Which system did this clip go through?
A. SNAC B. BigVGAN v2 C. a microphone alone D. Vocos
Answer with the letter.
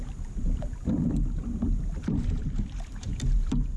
B